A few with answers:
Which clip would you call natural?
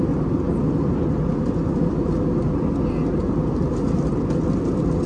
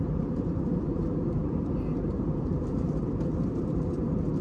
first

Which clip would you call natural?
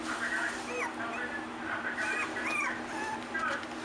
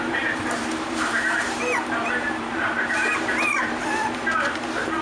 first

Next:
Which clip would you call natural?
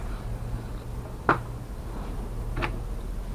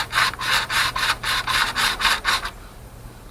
first